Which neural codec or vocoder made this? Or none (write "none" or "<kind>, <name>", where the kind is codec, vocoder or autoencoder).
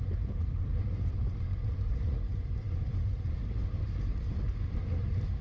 vocoder, BigVGAN v2